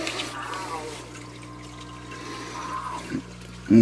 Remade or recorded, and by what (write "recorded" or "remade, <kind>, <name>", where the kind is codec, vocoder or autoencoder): recorded